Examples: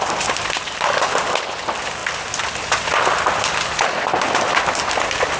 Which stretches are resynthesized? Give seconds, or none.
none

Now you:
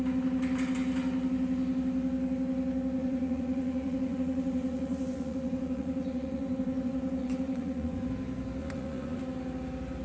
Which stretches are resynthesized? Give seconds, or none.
3.0-8.1 (vocoder, Vocos); 8.6-9.2

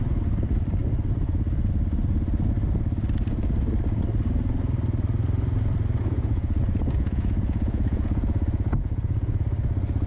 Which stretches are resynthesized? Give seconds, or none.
6.0-9.4 (vocoder, Vocos)

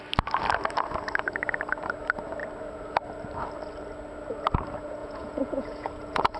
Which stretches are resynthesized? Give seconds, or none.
5.0-6.4 (vocoder, Vocos)

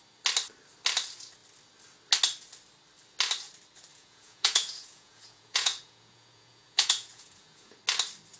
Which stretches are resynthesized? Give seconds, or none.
3.9-7.8 (vocoder, Vocos)

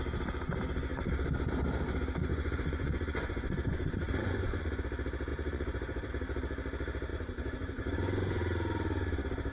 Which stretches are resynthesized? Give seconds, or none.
2.3-4.8 (vocoder, Vocos); 5.3-6.1; 7.1-8.4

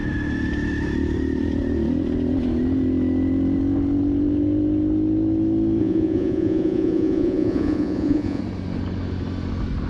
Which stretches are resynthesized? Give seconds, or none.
5.8-8.4 (vocoder, Vocos)

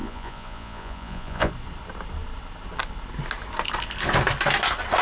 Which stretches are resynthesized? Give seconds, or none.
0.0-1.5 (vocoder, Vocos)